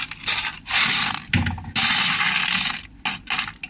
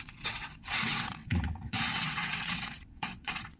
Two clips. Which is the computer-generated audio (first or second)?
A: second